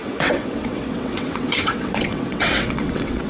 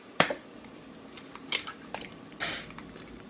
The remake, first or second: first